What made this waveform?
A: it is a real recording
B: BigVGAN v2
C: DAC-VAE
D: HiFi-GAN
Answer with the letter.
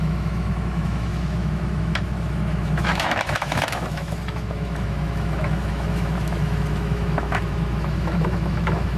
C